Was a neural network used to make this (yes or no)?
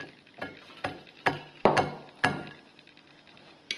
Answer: no